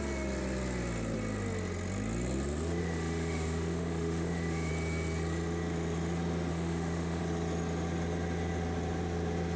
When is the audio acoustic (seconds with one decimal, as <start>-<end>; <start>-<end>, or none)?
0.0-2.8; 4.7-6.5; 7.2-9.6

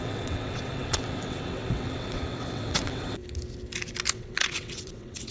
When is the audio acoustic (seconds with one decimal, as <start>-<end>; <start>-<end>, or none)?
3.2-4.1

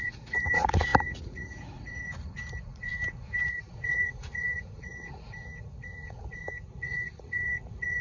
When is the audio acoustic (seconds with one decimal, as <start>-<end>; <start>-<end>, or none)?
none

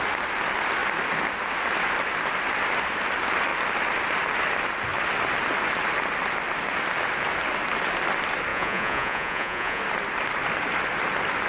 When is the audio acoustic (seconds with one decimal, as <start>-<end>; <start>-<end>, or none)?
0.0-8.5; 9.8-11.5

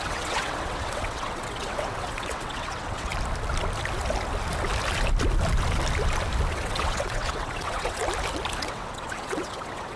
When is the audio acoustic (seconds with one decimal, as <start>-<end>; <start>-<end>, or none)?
3.1-6.5; 8.0-8.6

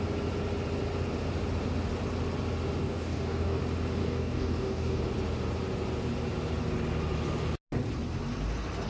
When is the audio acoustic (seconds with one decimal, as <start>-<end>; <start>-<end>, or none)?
0.0-2.8; 3.6-4.0; 5.0-8.9

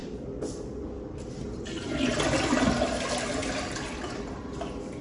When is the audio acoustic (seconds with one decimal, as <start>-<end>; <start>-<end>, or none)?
0.0-5.0